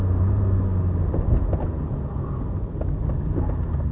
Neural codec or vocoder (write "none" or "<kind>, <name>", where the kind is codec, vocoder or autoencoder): none